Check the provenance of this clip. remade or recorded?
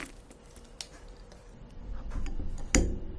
recorded